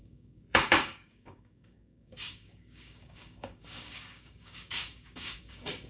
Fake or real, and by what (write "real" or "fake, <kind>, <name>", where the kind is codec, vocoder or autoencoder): fake, codec, DAC